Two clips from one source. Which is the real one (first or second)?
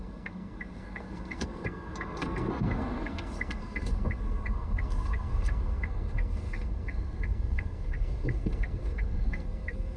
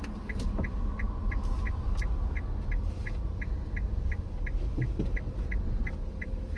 second